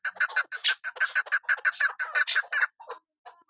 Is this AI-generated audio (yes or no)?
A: no